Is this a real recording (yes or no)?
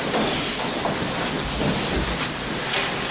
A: yes